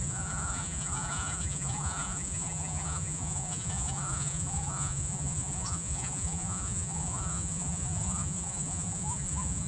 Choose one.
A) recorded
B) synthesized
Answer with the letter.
B